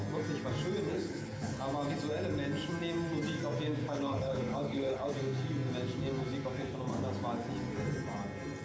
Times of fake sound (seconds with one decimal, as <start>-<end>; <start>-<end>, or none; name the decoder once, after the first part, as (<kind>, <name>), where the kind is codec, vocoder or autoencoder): 0.9-1.6 (codec, HILCodec); 3.8-5.1